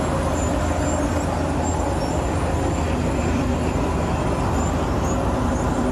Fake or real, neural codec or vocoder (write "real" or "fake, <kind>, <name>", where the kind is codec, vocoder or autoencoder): real